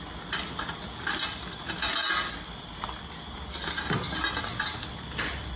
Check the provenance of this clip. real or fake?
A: real